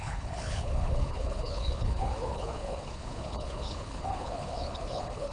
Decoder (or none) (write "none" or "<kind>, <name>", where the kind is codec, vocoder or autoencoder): codec, HILCodec